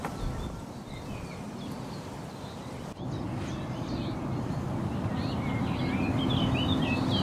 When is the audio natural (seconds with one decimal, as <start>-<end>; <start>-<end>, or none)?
0.0-7.2